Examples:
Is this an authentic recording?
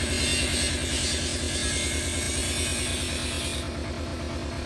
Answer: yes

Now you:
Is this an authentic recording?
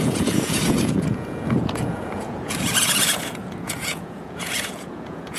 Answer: no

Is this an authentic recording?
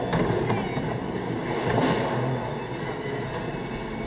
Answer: yes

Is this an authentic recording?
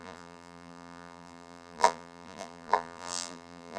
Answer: no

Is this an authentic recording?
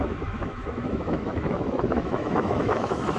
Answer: no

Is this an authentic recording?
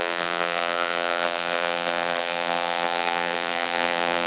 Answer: no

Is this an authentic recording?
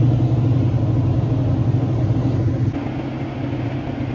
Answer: yes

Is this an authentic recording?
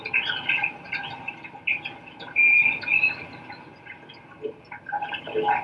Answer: yes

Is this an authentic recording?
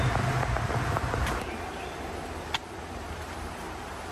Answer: no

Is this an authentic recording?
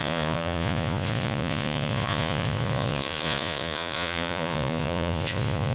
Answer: no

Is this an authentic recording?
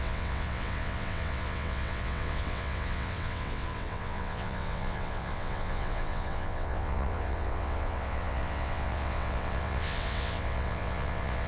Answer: no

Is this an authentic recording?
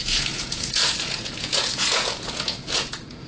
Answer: no